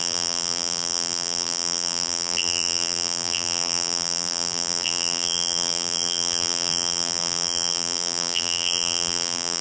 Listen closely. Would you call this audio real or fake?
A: fake